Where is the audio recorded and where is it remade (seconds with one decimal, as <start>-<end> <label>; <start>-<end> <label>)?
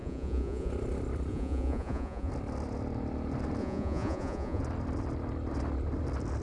0.0-0.7 remade; 0.7-1.3 recorded; 1.3-2.3 remade; 2.3-3.6 recorded; 3.6-4.6 remade; 4.6-6.4 recorded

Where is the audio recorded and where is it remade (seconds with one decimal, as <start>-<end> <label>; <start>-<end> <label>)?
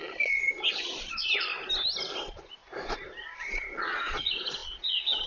0.0-1.5 remade; 1.5-2.2 recorded; 2.2-2.6 remade; 2.6-3.4 recorded; 3.4-5.3 remade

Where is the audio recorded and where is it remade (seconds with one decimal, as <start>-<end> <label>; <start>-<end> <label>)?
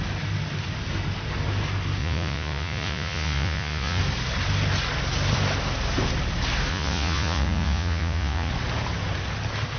0.0-2.0 recorded; 2.0-4.0 remade; 4.0-6.7 recorded; 6.7-8.5 remade; 8.5-9.8 recorded